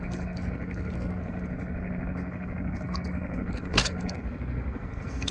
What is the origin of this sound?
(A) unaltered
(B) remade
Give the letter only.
B